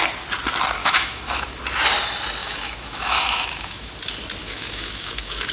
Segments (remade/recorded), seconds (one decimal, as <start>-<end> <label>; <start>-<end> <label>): 0.0-0.8 recorded; 0.8-1.6 remade; 1.6-2.4 recorded; 2.4-3.9 remade; 3.9-4.4 recorded; 4.4-5.5 remade